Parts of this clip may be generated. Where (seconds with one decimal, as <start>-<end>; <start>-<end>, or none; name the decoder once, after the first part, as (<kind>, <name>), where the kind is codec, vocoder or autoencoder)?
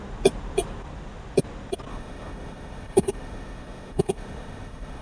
1.9-5.0 (autoencoder, DAC-VAE)